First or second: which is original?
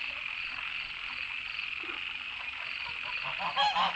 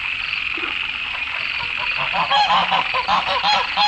first